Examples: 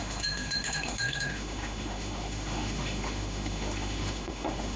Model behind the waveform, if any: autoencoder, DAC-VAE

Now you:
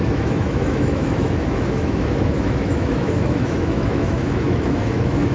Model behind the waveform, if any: autoencoder, DAC-VAE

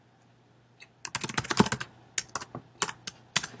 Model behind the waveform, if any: none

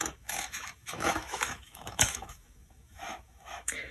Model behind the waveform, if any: autoencoder, DAC-VAE